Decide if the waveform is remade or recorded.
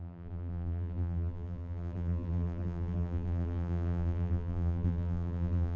remade